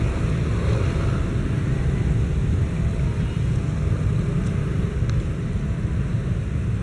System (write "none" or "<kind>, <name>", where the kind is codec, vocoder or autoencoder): none